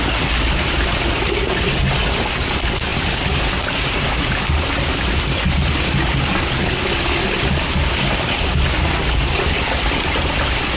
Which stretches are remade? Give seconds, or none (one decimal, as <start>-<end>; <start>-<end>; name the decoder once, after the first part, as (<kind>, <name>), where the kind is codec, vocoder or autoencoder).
none